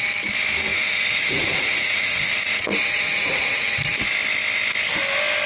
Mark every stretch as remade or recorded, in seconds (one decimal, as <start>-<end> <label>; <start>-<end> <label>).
0.0-0.7 recorded; 0.7-4.0 remade; 4.0-5.5 recorded

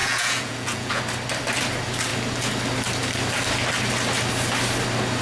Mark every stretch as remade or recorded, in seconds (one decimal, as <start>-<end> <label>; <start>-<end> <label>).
0.0-1.0 remade; 1.0-5.2 recorded

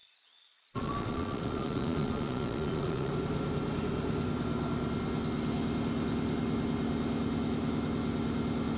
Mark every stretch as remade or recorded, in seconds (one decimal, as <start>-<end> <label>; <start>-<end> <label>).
0.0-3.1 remade; 3.1-8.8 recorded

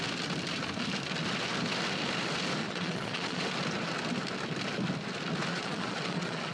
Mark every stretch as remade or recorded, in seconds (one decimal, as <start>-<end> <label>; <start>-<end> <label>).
0.0-2.6 recorded; 2.6-3.4 remade; 3.4-5.5 recorded; 5.5-6.5 remade